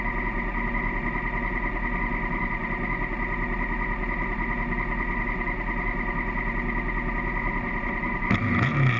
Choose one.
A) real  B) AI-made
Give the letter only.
A